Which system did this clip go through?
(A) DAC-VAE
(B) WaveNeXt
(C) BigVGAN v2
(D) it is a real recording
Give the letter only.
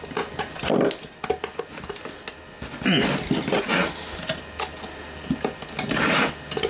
D